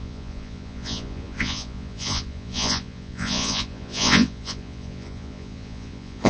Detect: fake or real fake